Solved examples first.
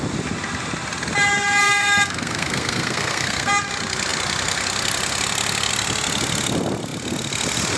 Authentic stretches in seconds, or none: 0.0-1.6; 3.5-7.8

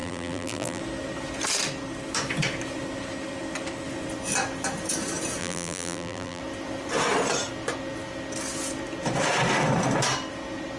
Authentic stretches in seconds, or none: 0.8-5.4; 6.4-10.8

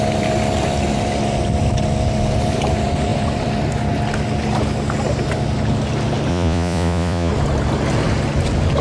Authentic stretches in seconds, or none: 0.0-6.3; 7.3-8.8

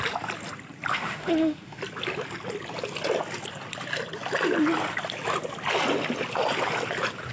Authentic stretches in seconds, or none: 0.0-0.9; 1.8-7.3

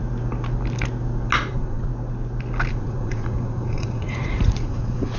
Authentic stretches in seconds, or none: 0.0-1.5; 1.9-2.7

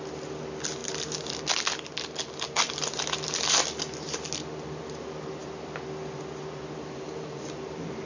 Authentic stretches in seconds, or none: 0.0-8.1

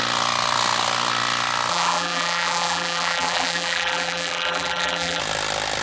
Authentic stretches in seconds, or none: 0.0-1.7; 5.2-5.8